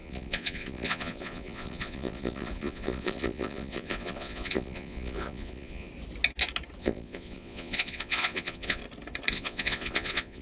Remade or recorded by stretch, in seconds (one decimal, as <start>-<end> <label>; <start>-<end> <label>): 0.0-5.9 remade; 5.9-6.8 recorded; 6.8-8.8 remade; 8.8-9.3 recorded; 9.3-10.4 remade